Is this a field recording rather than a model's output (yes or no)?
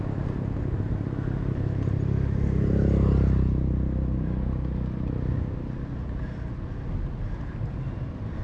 yes